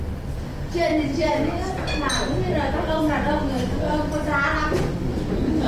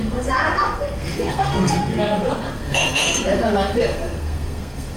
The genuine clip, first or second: first